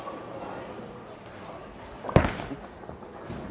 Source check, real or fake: real